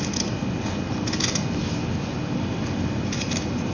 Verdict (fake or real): real